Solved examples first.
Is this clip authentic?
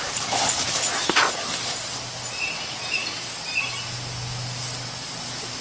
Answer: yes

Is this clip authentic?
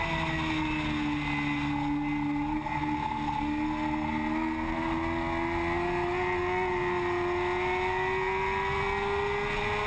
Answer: yes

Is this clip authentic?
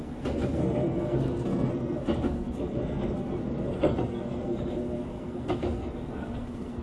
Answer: no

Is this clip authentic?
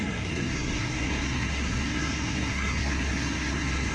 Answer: no